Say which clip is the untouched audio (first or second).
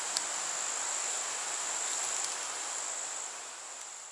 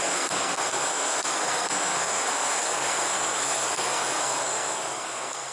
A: first